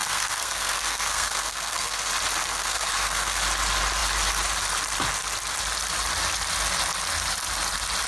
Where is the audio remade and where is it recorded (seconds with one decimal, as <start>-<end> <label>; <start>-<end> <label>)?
0.0-2.1 remade; 2.1-2.5 recorded; 2.5-3.4 remade; 3.4-8.1 recorded